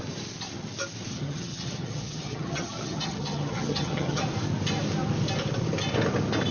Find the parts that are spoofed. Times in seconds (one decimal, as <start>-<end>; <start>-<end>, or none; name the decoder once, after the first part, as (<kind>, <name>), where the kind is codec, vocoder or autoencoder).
1.1-4.2 (vocoder, HiFi-GAN)